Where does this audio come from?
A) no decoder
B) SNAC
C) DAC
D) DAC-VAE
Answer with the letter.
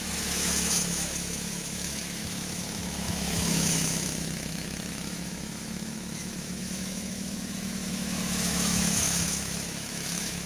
D